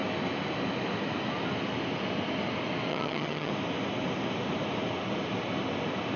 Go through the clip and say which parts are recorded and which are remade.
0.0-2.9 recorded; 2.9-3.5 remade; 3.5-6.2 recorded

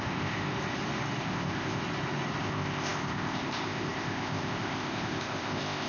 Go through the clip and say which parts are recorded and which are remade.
0.0-0.5 remade; 0.5-1.2 recorded; 1.2-1.8 remade; 1.8-2.4 recorded; 2.4-5.9 remade

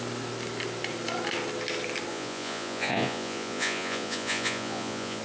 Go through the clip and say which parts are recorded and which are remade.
0.0-2.1 recorded; 2.1-5.2 remade

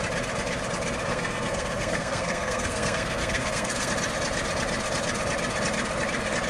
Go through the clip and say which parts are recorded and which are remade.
0.0-1.1 recorded; 1.1-3.9 remade; 3.9-6.5 recorded

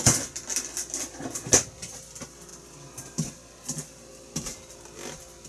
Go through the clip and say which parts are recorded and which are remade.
0.0-5.5 recorded

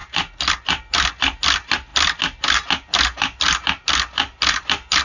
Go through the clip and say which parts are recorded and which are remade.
0.0-5.0 recorded

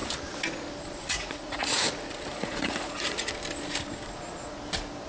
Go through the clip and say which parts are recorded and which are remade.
0.0-1.0 recorded; 1.0-1.8 remade; 1.8-2.3 recorded; 2.3-3.3 remade; 3.3-5.1 recorded

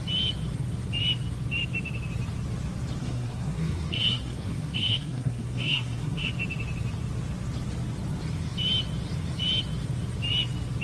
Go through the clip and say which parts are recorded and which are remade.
0.0-3.0 recorded; 3.0-6.3 remade; 6.3-10.8 recorded